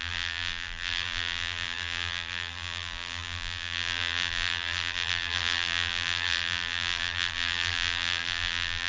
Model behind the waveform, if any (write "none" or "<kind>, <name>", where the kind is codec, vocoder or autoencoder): vocoder, BigVGAN v2